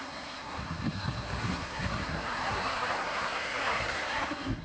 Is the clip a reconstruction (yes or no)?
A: yes